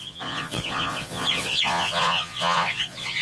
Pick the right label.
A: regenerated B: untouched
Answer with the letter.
A